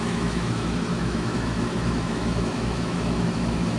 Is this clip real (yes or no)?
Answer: no